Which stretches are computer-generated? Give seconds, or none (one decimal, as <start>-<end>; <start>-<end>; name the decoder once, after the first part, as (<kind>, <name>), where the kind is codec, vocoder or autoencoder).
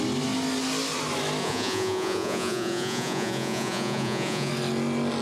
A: 1.4-4.5 (vocoder, Vocos)